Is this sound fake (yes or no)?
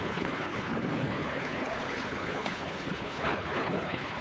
yes